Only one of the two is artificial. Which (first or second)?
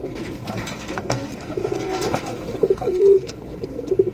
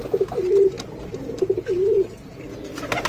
first